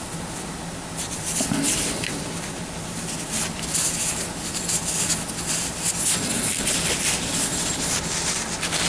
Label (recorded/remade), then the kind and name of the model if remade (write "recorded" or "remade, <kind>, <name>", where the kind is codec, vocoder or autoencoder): recorded